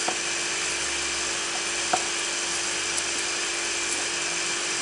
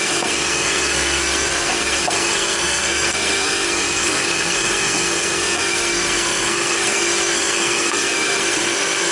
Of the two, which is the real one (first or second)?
first